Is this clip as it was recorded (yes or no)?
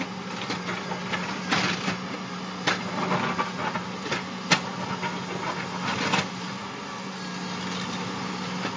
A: yes